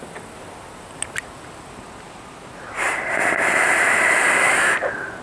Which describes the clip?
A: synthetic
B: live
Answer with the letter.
B